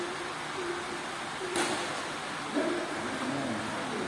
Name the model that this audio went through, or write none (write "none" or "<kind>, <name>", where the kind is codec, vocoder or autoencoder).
none